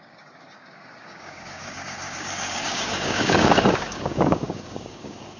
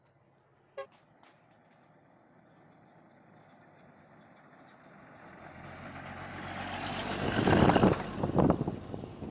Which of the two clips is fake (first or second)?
first